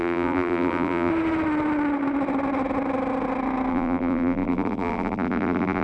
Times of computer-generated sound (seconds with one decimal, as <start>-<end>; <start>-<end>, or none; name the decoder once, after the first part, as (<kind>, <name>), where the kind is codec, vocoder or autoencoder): 0.0-1.1 (vocoder, BigVGAN v2); 3.7-5.8